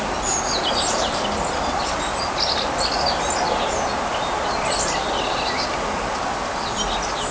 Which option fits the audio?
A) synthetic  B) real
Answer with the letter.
B